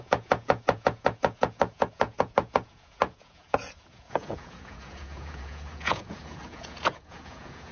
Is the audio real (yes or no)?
no